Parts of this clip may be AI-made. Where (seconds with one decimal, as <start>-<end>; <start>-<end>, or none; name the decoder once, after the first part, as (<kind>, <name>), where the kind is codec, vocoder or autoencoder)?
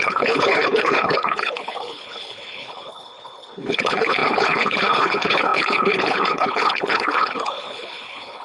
0.0-8.4 (codec, HILCodec)